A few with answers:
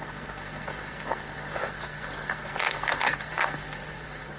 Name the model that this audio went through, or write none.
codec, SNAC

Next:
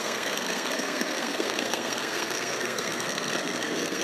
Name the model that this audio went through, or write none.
codec, SNAC